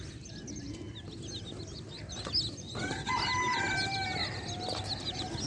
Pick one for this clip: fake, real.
real